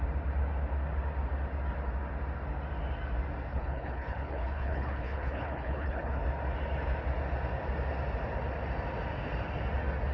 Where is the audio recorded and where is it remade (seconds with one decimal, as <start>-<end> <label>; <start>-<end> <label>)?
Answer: 0.0-3.5 recorded; 3.5-6.2 remade; 6.2-10.1 recorded